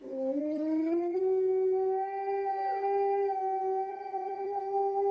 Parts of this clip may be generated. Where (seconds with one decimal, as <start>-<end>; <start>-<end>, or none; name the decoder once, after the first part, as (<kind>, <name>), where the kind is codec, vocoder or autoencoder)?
0.4-1.2 (vocoder, HiFi-GAN); 3.9-4.6

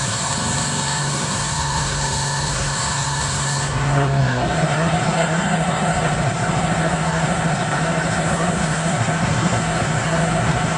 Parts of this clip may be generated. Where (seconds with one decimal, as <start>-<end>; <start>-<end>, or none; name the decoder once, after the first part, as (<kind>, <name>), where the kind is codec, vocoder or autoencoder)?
0.0-10.8 (codec, SNAC)